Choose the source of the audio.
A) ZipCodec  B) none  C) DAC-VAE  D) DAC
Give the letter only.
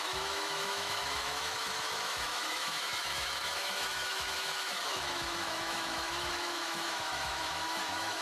C